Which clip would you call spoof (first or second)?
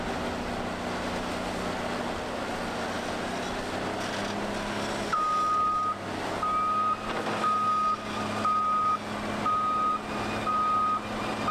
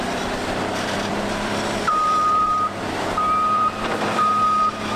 second